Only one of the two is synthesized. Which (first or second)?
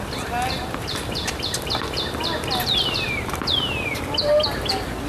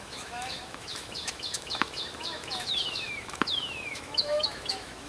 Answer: second